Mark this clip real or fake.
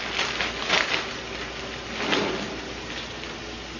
real